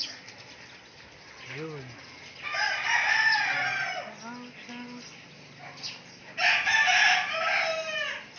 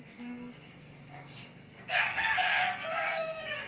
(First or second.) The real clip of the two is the first